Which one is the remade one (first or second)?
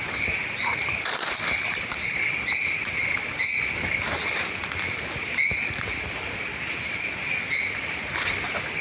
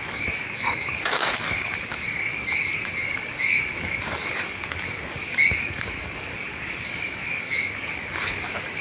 second